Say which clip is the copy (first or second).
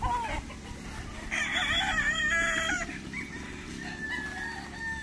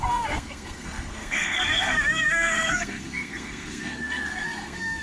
second